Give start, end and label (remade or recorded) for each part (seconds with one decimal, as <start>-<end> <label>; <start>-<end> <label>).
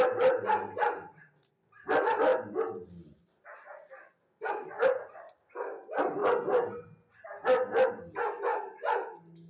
0.0-9.5 recorded